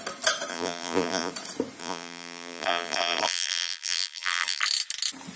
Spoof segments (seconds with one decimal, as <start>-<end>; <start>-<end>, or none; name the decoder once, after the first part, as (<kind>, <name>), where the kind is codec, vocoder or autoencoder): 0.5-1.3 (vocoder, BigVGAN v2); 1.8-4.6